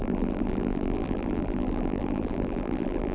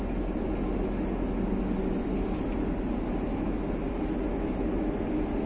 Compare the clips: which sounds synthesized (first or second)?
first